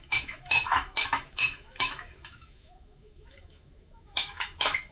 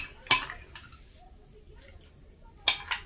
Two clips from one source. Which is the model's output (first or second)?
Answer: first